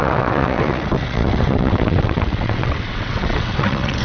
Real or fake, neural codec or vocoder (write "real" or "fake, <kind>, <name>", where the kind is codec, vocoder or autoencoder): fake, vocoder, WaveNeXt